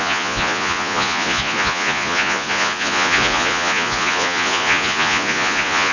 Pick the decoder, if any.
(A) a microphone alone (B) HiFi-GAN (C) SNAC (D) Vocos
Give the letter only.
D